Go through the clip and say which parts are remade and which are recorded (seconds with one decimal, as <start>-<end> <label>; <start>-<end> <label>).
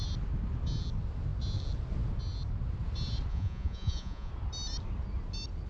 0.0-3.3 recorded; 3.3-4.3 remade; 4.3-5.7 recorded